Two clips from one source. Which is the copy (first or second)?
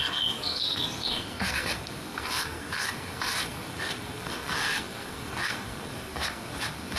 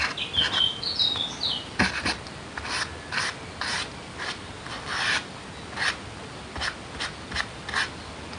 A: first